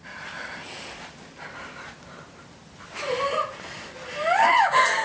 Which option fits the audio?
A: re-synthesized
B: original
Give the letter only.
B